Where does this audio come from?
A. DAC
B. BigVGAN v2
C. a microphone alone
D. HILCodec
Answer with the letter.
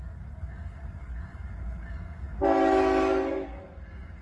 A